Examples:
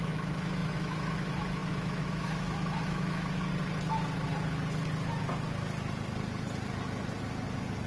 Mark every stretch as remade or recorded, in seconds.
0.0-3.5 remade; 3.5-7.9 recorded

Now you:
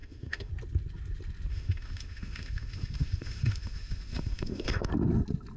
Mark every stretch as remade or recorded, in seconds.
0.0-0.5 remade; 0.5-1.5 recorded; 1.5-4.9 remade; 4.9-5.6 recorded

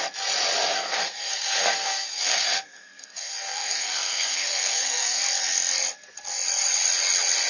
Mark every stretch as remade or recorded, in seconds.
0.0-0.7 recorded; 0.7-5.2 remade; 5.2-7.5 recorded

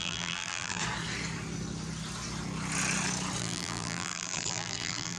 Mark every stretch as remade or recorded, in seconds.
0.0-0.8 remade; 0.8-3.4 recorded; 3.4-5.2 remade

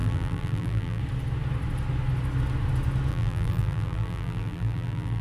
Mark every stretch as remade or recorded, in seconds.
0.0-1.0 remade; 1.0-3.1 recorded; 3.1-5.2 remade

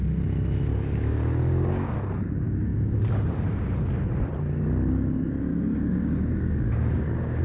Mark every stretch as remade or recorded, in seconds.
0.0-0.7 recorded; 0.7-1.9 remade; 1.9-2.7 recorded; 2.7-3.4 remade; 3.4-5.5 recorded; 5.5-7.4 remade